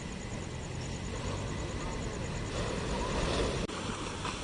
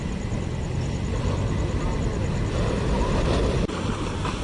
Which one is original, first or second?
first